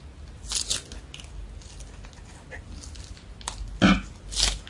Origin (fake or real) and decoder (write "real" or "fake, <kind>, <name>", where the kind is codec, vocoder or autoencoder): real